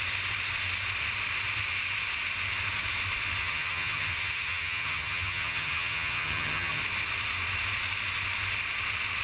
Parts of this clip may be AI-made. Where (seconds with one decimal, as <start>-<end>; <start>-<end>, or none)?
3.4-6.8